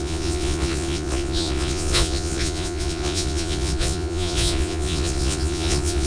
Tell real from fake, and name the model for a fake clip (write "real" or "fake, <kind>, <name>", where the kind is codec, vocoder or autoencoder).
fake, vocoder, Vocos